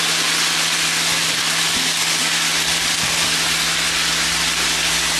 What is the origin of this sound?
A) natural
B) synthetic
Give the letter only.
A